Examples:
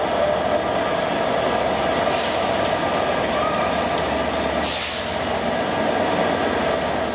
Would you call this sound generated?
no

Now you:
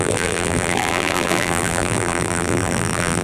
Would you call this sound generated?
yes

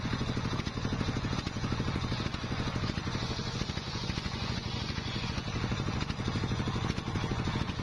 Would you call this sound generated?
yes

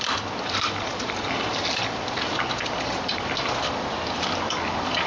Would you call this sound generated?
yes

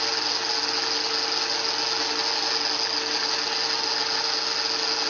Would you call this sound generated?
no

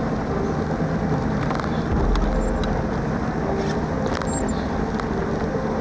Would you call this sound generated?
no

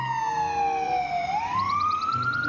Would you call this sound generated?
no